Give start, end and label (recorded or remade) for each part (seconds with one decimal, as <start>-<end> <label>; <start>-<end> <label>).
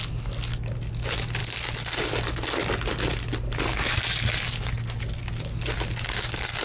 0.0-6.6 recorded